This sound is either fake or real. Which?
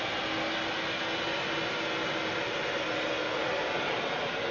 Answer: real